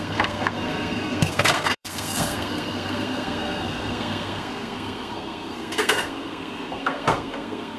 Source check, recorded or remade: remade